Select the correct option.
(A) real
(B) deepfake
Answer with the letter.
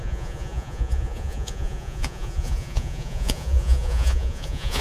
B